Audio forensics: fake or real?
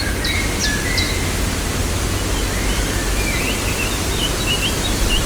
real